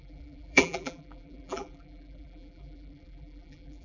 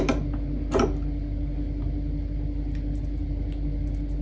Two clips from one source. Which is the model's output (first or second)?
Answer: first